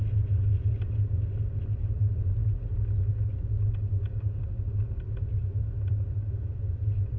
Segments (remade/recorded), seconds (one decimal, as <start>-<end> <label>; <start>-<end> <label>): 0.0-3.9 recorded; 3.9-4.5 remade; 4.5-7.2 recorded